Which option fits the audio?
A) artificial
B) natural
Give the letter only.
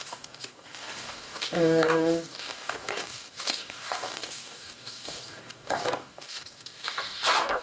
A